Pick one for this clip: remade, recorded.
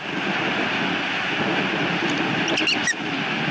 recorded